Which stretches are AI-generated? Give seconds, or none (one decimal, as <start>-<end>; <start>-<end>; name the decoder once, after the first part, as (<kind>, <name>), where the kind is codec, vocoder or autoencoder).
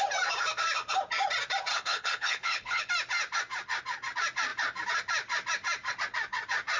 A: 1.7-2.9 (codec, HILCodec)